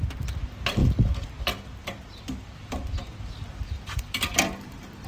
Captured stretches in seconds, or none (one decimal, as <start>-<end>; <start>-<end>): 0.0-1.8